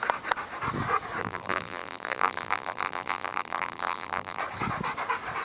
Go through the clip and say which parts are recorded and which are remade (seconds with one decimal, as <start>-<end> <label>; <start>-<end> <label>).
0.0-1.2 recorded; 1.2-4.4 remade; 4.4-5.4 recorded